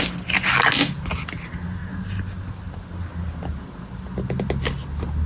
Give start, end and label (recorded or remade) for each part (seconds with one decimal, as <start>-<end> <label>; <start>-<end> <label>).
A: 0.0-5.3 recorded